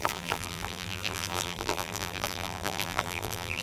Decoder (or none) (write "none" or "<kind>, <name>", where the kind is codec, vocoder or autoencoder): vocoder, BigVGAN v2